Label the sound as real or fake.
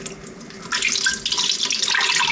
real